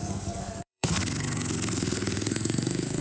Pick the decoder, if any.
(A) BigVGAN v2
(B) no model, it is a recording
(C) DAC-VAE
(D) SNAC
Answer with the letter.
D